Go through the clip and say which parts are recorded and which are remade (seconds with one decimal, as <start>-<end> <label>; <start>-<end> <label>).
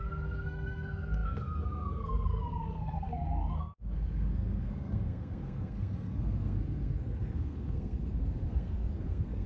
0.0-9.5 remade